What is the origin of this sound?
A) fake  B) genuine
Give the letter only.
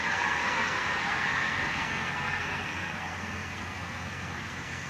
A